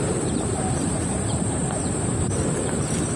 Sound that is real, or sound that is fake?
fake